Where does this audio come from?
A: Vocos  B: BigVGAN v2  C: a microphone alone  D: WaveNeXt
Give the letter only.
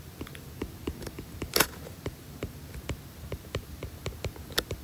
C